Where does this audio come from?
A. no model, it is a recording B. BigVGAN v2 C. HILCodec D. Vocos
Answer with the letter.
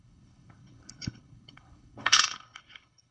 C